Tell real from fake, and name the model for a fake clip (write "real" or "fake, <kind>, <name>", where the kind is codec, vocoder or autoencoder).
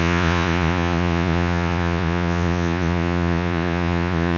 fake, vocoder, Vocos